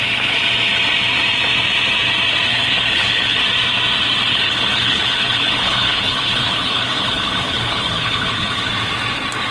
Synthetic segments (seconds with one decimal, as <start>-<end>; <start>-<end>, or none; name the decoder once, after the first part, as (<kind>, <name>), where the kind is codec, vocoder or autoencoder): 2.5-3.4 (codec, HILCodec); 4.3-8.7